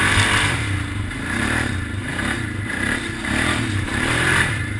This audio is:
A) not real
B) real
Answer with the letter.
A